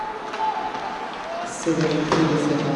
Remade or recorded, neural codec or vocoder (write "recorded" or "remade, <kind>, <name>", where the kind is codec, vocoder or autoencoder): recorded